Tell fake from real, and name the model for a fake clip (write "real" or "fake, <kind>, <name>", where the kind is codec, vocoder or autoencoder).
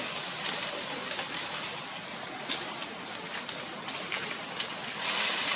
real